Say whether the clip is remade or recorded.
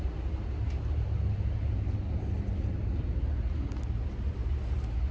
recorded